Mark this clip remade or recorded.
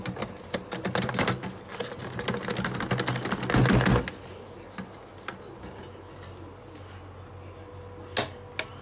recorded